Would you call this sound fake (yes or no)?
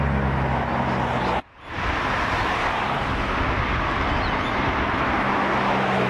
no